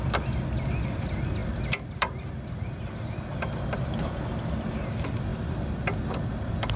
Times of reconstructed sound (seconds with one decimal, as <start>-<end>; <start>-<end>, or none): none